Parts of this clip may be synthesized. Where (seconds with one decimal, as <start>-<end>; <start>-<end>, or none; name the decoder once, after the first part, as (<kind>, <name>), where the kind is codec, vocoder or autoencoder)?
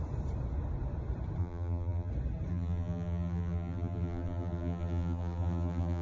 1.4-2.1 (vocoder, BigVGAN v2); 2.5-6.0